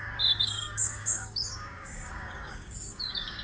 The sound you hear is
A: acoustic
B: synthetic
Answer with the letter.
B